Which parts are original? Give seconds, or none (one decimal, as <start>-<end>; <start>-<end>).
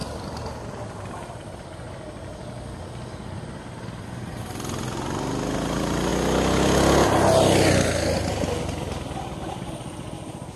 0.0-10.6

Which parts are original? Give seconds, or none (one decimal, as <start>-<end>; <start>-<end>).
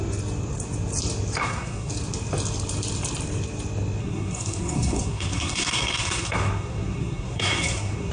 0.0-1.4; 1.9-4.0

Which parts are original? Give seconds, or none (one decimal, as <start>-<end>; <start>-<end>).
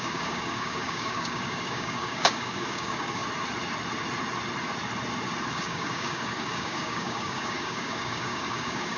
3.2-5.5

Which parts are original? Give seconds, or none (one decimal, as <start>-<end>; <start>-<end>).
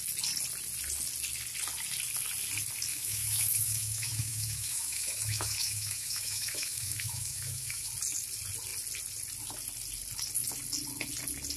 0.0-2.9; 7.9-11.6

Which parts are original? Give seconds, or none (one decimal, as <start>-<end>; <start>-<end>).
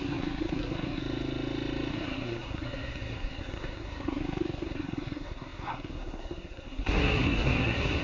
1.0-1.9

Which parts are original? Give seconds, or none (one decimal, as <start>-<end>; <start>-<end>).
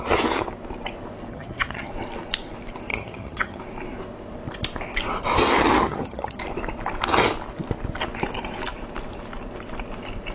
0.0-1.3; 1.9-2.9; 3.6-5.6; 6.4-10.3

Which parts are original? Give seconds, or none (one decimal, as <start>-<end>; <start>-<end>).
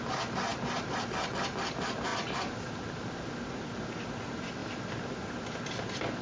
0.0-2.1; 2.7-4.6; 5.1-6.2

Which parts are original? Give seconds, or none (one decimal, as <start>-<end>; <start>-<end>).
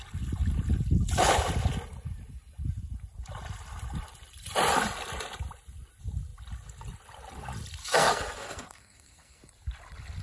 0.0-7.8; 9.4-10.2